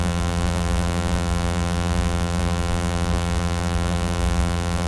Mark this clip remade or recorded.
remade